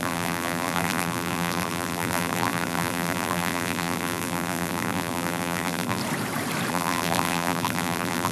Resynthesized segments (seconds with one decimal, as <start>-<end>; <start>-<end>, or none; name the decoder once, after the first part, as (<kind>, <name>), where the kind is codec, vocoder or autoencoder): 0.0-6.0 (vocoder, BigVGAN v2); 6.7-8.3